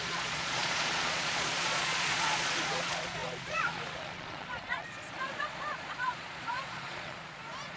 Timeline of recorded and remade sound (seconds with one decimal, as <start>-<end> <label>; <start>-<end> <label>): 0.0-7.8 remade